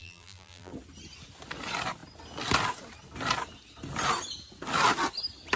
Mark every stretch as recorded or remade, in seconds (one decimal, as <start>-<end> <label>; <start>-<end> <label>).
0.0-0.7 remade; 0.7-5.6 recorded